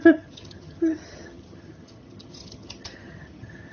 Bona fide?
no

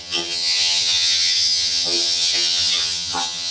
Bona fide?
no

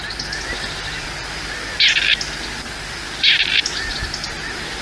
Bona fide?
yes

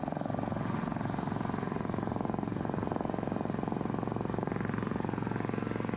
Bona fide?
yes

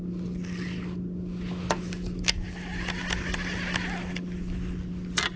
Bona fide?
yes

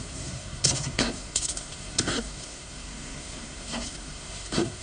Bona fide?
no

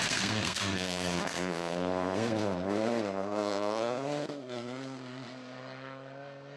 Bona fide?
no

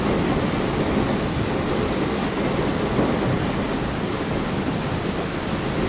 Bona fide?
yes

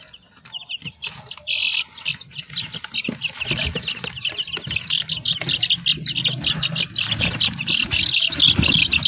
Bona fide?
yes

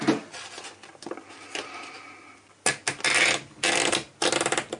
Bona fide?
yes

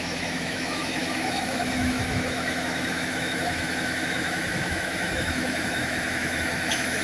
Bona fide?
no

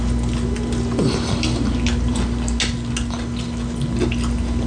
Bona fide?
yes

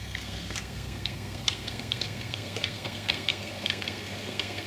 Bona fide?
no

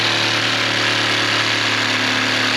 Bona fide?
yes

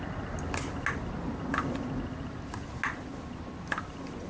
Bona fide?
yes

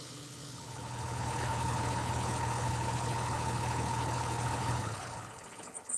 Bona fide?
no